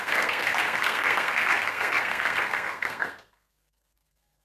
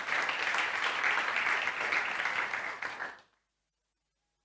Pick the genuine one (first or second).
second